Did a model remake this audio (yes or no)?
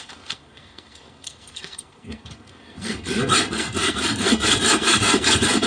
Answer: yes